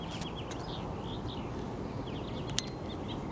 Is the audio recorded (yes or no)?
yes